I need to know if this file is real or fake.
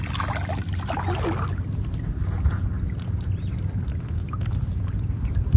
real